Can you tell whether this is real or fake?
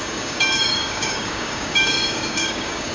fake